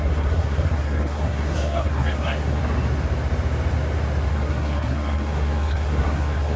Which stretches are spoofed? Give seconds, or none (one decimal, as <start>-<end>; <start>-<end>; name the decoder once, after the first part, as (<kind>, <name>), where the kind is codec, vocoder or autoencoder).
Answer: 0.0-2.6 (codec, SNAC); 4.3-6.6